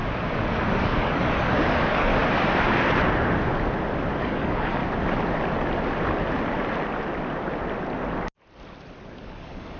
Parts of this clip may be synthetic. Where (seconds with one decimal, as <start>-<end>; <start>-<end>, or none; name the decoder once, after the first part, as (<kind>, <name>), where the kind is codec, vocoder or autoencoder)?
0.5-2.1 (codec, DAC); 4.2-4.8; 9.2-9.8

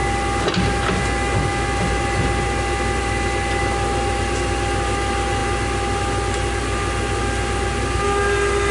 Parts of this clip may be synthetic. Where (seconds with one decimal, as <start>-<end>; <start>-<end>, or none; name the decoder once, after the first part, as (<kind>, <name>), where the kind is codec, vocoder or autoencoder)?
none

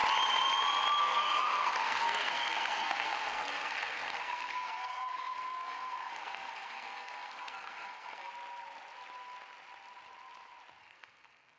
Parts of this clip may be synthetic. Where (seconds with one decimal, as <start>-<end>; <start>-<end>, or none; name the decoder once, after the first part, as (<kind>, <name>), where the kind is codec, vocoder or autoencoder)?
1.0-8.3 (codec, SNAC); 10.8-11.6

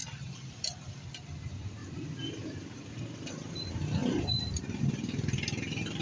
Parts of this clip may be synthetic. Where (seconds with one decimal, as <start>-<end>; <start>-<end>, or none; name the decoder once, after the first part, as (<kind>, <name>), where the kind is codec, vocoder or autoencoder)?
1.8-2.9 (vocoder, BigVGAN v2)